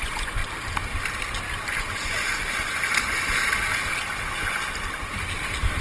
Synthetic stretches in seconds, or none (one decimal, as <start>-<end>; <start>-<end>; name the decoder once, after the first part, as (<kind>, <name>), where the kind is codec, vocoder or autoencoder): 0.0-0.4 (vocoder, Vocos); 1.9-3.5